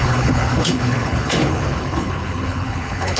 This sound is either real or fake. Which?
fake